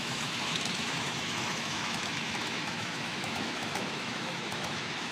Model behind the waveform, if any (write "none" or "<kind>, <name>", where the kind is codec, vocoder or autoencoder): autoencoder, DAC-VAE